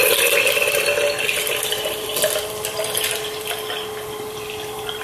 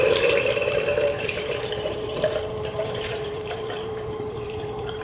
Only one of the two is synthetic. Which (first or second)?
second